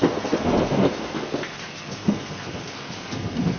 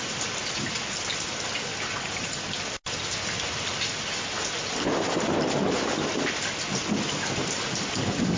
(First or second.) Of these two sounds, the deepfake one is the first